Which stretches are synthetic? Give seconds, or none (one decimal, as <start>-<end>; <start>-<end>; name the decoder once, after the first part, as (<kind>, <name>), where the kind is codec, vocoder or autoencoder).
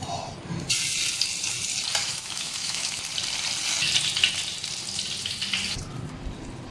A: 2.0-3.0 (autoencoder, DAC-VAE)